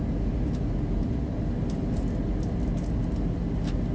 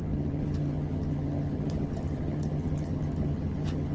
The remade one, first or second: second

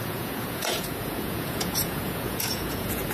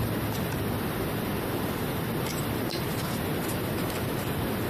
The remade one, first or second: first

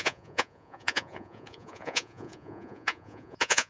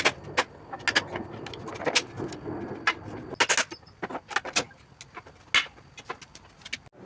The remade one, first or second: first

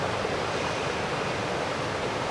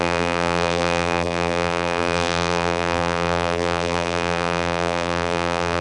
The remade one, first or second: second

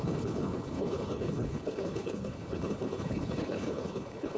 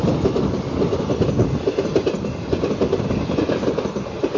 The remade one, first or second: first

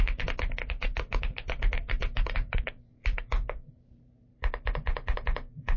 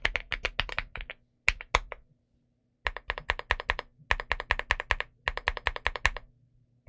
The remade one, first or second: first